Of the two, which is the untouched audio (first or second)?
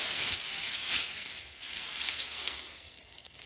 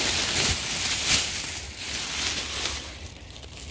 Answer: second